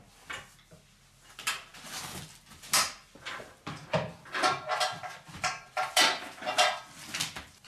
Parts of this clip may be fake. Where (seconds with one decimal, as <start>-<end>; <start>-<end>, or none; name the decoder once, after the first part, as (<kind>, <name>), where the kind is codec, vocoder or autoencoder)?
none